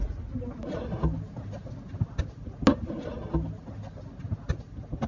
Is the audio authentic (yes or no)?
yes